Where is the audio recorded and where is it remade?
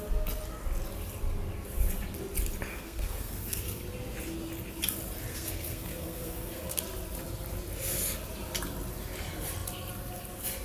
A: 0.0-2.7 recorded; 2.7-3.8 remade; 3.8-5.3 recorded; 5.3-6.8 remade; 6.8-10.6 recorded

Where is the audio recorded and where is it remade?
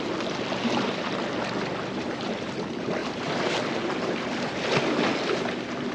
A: 0.0-3.0 recorded; 3.0-4.5 remade; 4.5-5.9 recorded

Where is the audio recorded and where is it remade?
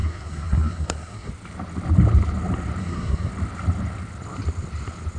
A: 0.0-1.3 remade; 1.3-2.8 recorded; 2.8-3.3 remade; 3.3-5.2 recorded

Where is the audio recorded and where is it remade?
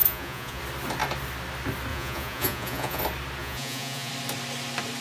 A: 0.0-0.6 remade; 0.6-1.9 recorded; 1.9-3.0 remade; 3.0-3.4 recorded; 3.4-4.1 remade; 4.1-5.0 recorded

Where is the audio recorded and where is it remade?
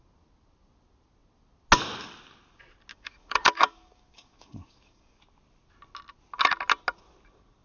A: 0.0-2.9 recorded; 2.9-5.2 remade; 5.2-7.6 recorded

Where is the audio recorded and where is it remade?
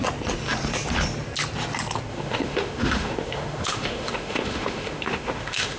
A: 0.0-2.1 recorded; 2.1-5.8 remade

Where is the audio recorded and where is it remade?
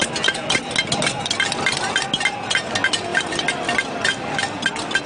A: 0.0-3.1 recorded; 3.1-4.6 remade; 4.6-5.1 recorded